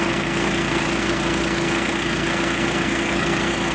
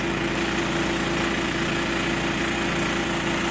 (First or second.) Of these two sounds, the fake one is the first